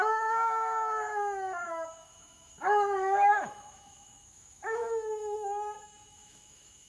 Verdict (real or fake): fake